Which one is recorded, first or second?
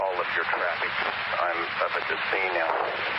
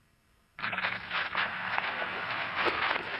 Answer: first